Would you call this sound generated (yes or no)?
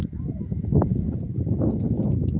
yes